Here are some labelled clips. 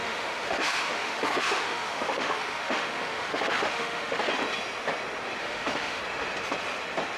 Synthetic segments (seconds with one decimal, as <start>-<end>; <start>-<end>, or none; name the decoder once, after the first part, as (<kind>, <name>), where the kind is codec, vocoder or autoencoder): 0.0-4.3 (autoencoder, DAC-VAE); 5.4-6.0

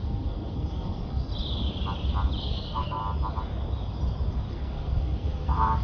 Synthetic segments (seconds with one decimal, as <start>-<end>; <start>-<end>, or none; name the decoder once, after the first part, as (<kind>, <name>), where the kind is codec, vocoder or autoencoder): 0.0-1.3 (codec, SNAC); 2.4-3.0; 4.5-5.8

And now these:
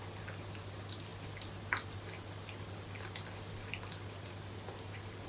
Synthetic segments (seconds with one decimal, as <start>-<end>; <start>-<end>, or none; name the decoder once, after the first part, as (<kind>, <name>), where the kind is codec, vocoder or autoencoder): none